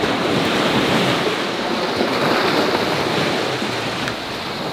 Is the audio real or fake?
fake